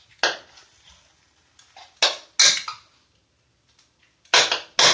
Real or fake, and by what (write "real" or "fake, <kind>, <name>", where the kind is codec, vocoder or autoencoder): real